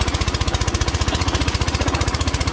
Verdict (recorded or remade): remade